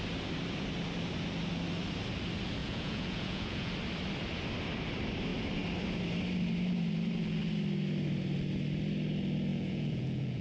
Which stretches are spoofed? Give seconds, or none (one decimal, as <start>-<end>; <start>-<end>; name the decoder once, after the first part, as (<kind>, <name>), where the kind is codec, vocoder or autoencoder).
2.6-3.7 (vocoder, Vocos); 9.5-10.4